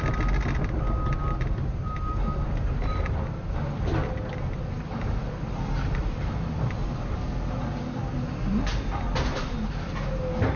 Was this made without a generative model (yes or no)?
yes